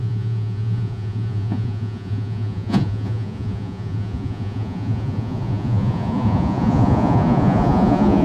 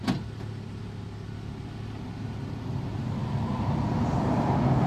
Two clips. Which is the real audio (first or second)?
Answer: second